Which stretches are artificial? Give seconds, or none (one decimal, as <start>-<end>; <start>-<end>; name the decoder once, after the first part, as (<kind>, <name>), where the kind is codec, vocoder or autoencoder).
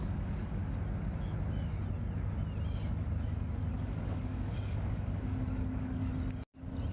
0.0-0.6 (codec, DAC); 3.8-6.1